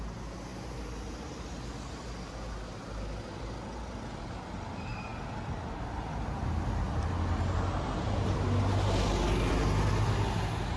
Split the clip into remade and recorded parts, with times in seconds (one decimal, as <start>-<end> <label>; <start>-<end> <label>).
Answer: 0.0-10.8 recorded